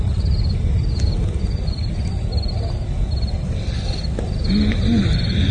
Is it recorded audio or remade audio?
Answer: recorded